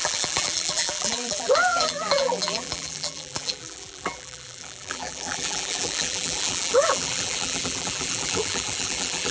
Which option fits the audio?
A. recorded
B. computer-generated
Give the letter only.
B